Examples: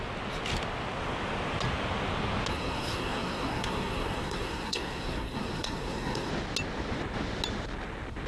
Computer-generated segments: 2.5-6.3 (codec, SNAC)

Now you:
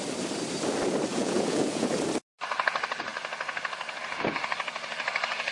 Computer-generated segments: 1.1-1.9 (vocoder, Vocos)

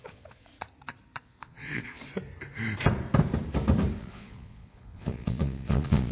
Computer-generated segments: 0.0-0.5 (vocoder, Vocos); 1.2-2.0; 4.0-6.1

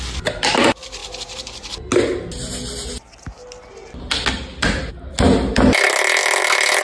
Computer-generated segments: none

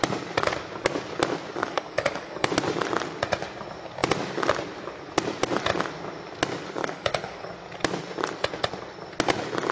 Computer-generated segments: 1.6-2.5 (codec, DAC); 6.8-7.5